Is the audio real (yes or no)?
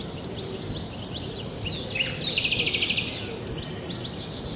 yes